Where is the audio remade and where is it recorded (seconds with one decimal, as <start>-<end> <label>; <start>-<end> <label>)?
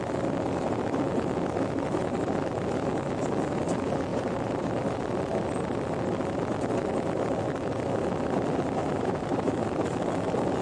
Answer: 0.0-4.1 recorded; 4.1-4.6 remade; 4.6-8.8 recorded; 8.8-9.5 remade; 9.5-10.6 recorded